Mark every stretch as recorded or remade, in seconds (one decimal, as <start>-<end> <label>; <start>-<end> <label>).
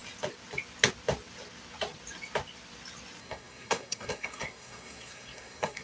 0.0-3.2 recorded; 3.2-5.8 remade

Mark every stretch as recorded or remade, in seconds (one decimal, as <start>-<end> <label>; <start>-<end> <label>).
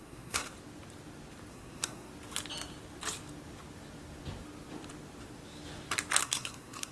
0.0-0.5 remade; 0.5-1.5 recorded; 1.5-2.1 remade; 2.1-6.2 recorded; 6.2-6.9 remade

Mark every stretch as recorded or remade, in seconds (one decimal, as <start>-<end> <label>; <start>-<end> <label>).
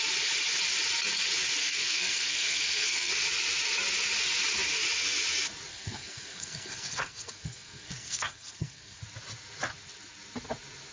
0.0-1.6 recorded; 1.6-3.1 remade; 3.1-5.7 recorded; 5.7-9.0 remade; 9.0-10.9 recorded